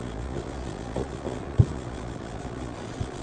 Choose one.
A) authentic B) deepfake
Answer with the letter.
B